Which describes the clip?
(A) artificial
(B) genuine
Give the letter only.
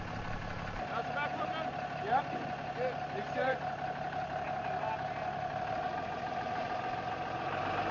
B